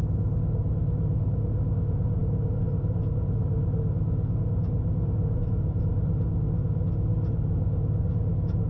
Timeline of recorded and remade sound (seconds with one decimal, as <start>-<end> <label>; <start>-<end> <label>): 0.0-8.7 recorded